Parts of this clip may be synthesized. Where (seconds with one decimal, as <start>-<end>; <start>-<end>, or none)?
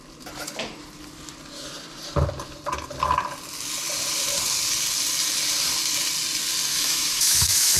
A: 6.7-7.8